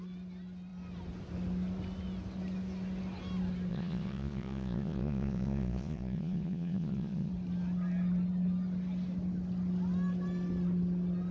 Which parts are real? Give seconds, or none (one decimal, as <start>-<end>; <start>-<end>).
0.0-3.7; 7.3-11.3